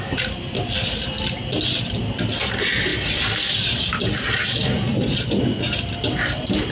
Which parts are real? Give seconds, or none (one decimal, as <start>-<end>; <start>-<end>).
0.0-6.7